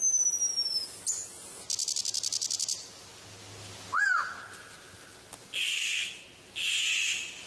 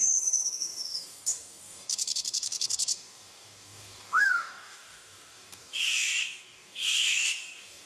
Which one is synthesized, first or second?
second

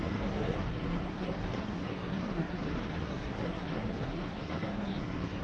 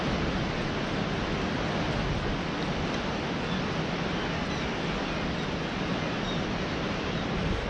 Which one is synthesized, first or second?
first